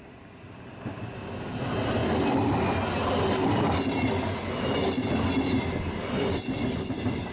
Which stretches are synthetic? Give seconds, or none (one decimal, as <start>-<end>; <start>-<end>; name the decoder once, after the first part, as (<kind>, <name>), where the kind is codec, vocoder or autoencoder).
none

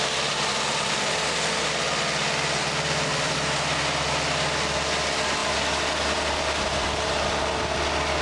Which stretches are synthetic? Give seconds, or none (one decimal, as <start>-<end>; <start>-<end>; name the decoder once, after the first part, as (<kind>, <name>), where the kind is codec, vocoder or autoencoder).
none

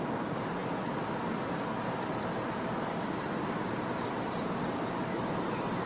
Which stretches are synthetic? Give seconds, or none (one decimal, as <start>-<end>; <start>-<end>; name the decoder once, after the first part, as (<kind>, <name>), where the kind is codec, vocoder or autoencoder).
0.0-5.9 (vocoder, BigVGAN v2)